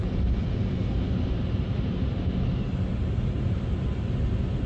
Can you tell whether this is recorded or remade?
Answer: recorded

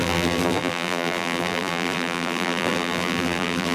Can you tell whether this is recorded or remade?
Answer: remade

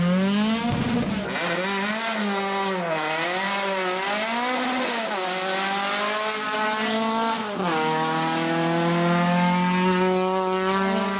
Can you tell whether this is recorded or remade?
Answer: recorded